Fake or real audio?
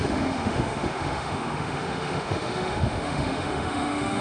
fake